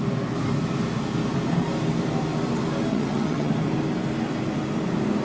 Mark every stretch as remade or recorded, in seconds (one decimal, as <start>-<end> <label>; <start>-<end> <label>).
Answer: 0.0-2.9 recorded; 2.9-3.5 remade; 3.5-5.2 recorded